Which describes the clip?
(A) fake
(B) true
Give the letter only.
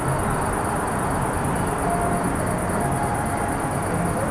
B